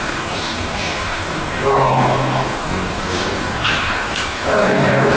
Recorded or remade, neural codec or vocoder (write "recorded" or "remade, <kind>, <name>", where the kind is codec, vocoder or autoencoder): remade, codec, DAC